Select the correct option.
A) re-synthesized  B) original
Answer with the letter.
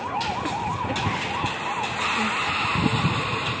B